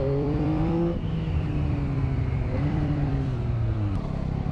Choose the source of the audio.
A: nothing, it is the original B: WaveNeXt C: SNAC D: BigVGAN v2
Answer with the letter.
D